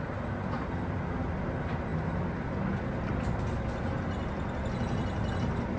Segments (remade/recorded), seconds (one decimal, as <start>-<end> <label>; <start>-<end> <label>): 0.0-5.8 recorded